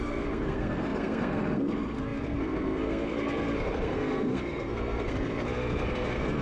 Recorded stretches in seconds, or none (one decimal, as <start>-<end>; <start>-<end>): none